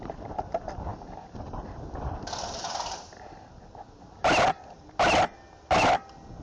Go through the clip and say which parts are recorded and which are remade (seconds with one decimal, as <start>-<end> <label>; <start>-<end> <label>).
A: 0.0-6.4 recorded